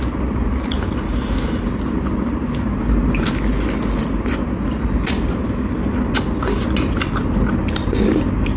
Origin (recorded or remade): recorded